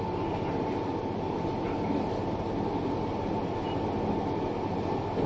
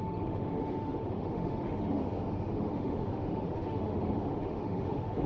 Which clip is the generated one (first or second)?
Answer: second